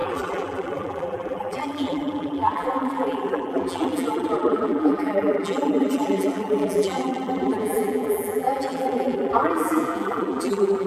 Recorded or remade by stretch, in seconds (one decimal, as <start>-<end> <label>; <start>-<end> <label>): 0.0-10.9 remade